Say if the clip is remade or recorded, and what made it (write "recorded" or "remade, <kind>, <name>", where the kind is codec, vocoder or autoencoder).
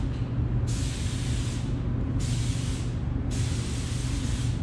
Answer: recorded